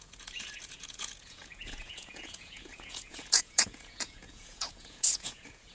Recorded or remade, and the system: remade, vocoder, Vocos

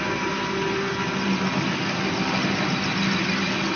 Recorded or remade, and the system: recorded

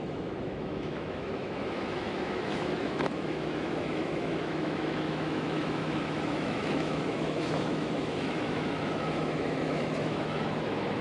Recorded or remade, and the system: remade, autoencoder, DAC-VAE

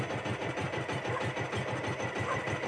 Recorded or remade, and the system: recorded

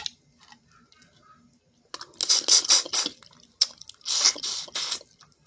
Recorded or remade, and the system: recorded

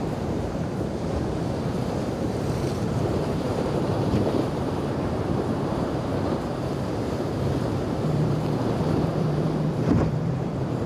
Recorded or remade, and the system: remade, vocoder, BigVGAN v2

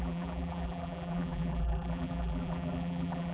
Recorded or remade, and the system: remade, vocoder, BigVGAN v2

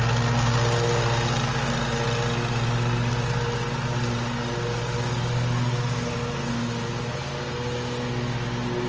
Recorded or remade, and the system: recorded